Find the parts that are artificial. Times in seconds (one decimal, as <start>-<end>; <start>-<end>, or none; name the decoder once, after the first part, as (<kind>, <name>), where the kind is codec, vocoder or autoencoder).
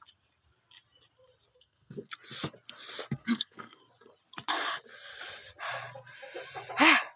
1.5-2.1 (codec, SNAC); 3.2-3.8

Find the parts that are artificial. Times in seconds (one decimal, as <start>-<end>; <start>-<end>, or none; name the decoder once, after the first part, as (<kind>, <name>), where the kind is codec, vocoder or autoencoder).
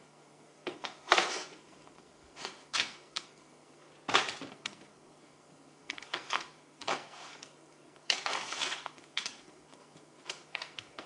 0.0-3.9 (codec, SNAC); 4.5-11.1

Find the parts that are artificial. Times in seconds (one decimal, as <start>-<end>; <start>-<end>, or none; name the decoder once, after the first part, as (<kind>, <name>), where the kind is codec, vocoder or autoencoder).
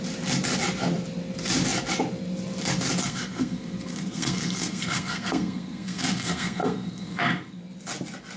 3.0-7.6 (codec, SNAC)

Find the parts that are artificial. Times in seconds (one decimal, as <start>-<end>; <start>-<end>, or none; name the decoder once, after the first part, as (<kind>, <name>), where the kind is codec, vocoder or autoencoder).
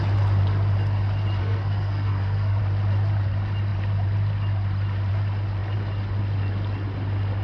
1.4-2.6 (codec, SNAC)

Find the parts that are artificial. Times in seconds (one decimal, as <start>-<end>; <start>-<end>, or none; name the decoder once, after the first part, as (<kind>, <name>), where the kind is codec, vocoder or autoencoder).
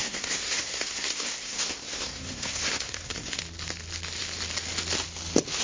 0.0-3.4 (codec, SNAC)